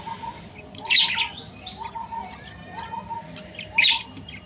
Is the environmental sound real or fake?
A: real